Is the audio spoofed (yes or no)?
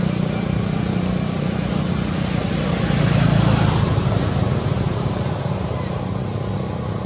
no